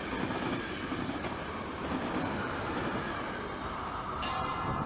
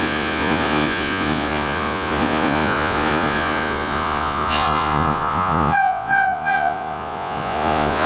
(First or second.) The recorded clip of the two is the first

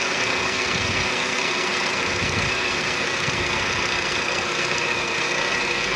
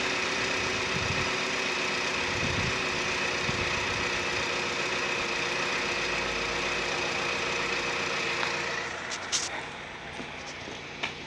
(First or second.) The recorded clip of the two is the second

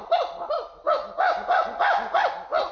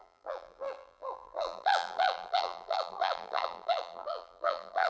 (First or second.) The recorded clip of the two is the first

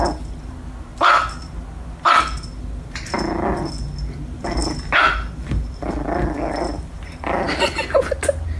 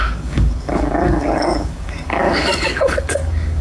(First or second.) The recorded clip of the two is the first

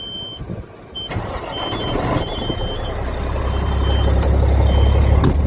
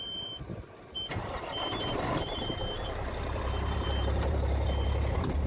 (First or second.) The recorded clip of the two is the first